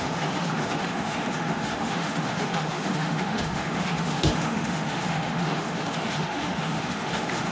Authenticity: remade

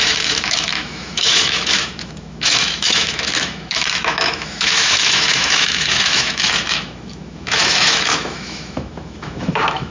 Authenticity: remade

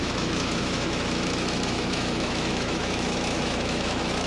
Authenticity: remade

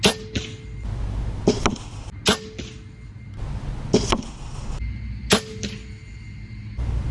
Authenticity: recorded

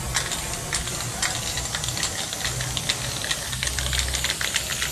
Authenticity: recorded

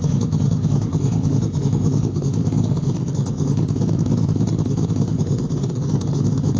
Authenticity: remade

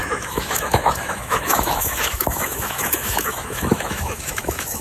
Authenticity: remade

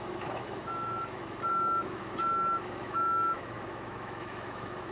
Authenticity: remade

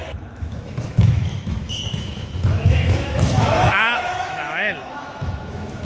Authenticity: remade